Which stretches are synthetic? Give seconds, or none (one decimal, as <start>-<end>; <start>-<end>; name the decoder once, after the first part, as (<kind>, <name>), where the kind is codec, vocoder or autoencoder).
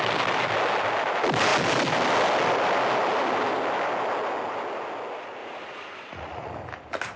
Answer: 5.4-6.5 (vocoder, Vocos)